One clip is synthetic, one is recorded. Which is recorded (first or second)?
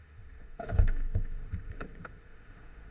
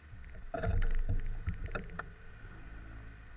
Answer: second